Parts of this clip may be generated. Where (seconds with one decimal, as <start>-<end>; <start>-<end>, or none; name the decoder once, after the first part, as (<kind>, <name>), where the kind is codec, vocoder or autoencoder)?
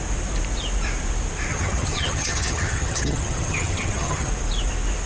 1.5-4.3 (vocoder, HiFi-GAN)